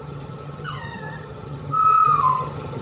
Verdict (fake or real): fake